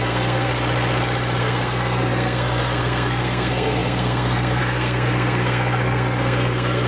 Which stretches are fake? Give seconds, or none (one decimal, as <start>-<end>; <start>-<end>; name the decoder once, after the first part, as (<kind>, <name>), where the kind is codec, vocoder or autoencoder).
0.0-0.5 (codec, SNAC); 1.4-6.9